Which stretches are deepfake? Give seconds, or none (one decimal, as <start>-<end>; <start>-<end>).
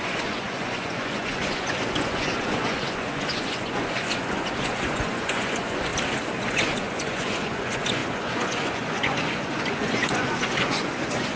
0.0-5.9; 6.4-11.4